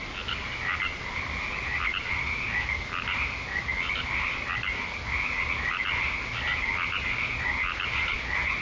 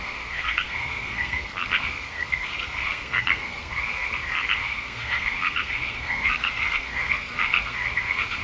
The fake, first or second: second